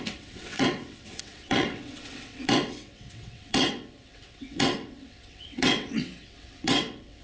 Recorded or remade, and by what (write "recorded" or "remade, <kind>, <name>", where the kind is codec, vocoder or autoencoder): remade, vocoder, WaveNeXt